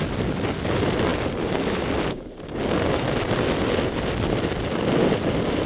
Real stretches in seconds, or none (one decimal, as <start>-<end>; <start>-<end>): 0.0-1.1; 4.0-5.7